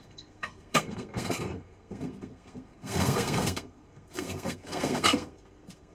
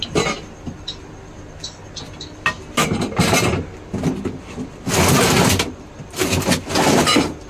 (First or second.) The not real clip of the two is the first